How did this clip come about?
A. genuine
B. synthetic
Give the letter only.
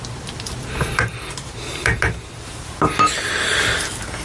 A